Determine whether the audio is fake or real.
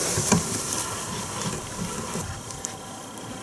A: fake